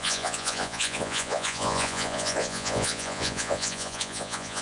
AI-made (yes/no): yes